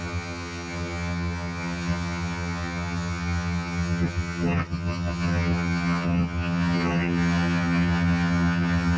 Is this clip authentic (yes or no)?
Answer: no